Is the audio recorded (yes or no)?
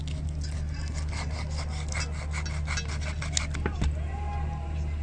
yes